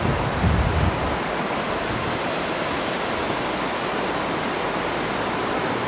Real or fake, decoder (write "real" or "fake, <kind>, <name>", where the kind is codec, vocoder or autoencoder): real